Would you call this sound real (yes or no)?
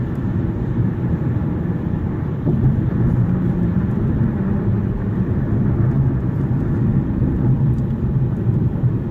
no